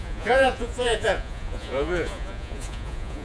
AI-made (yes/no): yes